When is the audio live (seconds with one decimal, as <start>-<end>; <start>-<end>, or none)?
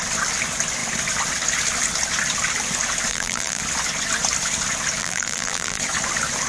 0.0-3.1; 3.6-5.0; 5.8-6.5